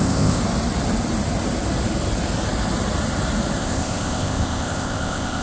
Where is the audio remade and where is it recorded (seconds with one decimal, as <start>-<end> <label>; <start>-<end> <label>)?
0.0-0.4 remade; 0.4-3.6 recorded; 3.6-5.4 remade